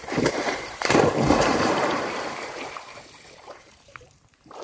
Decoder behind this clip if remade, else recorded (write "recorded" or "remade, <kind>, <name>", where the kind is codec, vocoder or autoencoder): remade, vocoder, BigVGAN v2